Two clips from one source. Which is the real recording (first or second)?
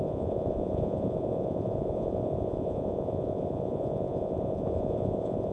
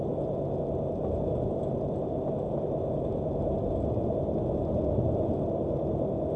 second